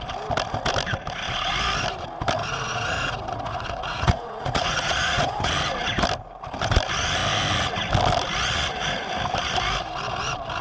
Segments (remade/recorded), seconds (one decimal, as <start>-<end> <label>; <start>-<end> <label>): 0.0-2.4 recorded; 2.4-5.5 remade; 5.5-10.6 recorded